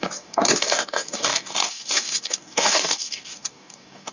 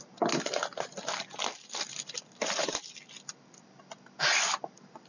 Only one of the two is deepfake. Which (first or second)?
first